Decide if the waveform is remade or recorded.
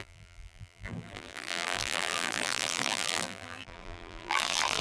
remade